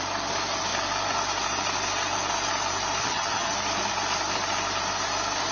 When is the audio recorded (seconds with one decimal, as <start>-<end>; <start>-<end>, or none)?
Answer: 0.0-3.0; 3.5-5.5

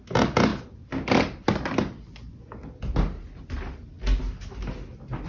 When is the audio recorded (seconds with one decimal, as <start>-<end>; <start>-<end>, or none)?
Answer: 0.0-5.3

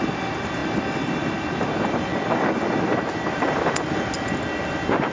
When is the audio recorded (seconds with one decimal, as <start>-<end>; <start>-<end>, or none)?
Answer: 0.0-5.1